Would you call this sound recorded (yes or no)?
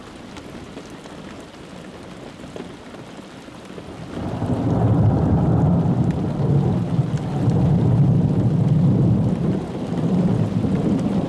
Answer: yes